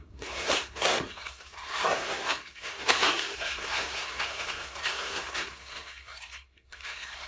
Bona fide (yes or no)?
no